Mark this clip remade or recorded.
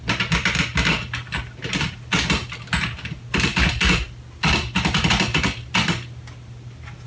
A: recorded